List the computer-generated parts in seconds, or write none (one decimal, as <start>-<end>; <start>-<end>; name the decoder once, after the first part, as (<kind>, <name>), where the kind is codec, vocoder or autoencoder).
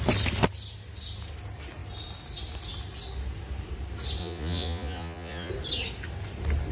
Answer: 4.2-5.5 (vocoder, Vocos)